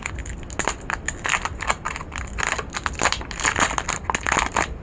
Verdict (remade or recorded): recorded